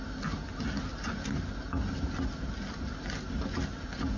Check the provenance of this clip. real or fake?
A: real